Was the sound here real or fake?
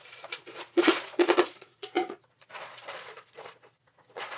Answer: fake